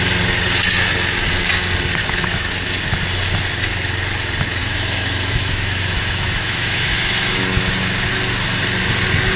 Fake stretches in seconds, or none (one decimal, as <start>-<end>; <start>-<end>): 2.0-2.5; 4.6-7.8